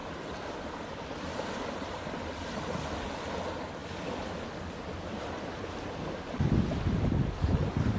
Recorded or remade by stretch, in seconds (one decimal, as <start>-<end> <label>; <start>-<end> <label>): 0.0-8.0 recorded